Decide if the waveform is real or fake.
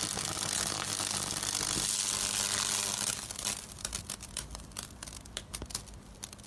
real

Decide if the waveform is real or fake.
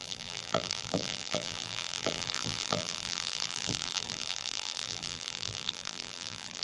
fake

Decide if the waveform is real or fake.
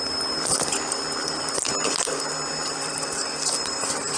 real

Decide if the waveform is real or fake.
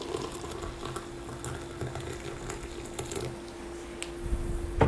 real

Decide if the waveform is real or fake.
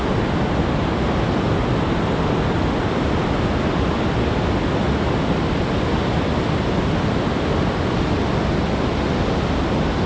real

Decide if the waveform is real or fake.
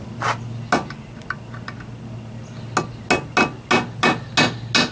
real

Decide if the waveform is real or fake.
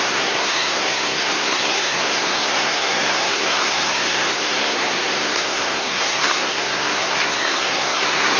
fake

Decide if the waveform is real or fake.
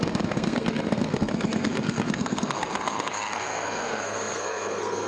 fake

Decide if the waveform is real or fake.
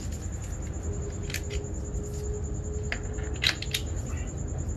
real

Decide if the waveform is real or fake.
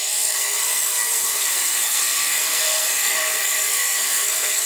fake